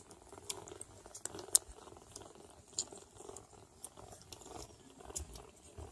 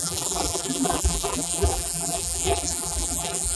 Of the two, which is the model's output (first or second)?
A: second